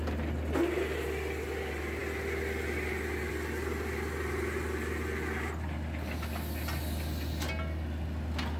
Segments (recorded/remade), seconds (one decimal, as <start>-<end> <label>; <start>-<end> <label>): 0.0-8.6 recorded